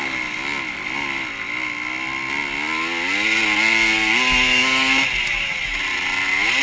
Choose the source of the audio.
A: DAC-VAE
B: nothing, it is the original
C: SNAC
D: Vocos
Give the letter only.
B